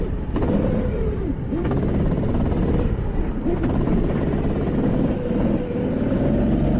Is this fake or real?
real